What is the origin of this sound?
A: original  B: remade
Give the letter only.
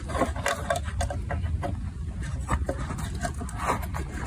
A